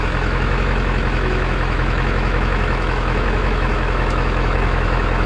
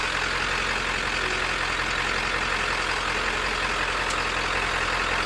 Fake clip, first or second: first